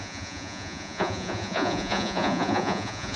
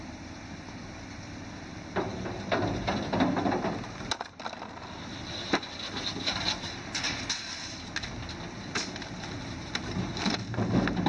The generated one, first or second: first